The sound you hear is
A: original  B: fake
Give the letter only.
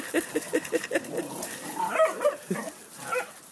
A